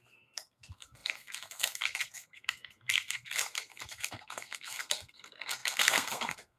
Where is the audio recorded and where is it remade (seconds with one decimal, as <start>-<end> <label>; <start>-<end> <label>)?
0.0-6.6 remade